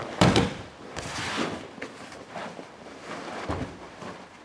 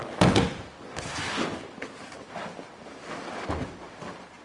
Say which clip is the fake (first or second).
first